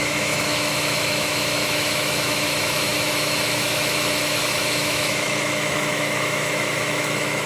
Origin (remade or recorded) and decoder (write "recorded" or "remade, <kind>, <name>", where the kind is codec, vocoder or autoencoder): remade, autoencoder, DAC-VAE